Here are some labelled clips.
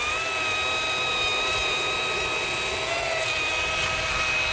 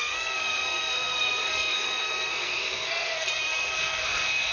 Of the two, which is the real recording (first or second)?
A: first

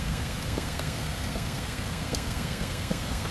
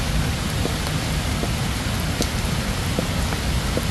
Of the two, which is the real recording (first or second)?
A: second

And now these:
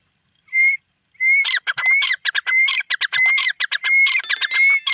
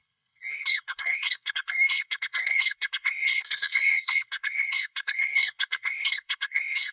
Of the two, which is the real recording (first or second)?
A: first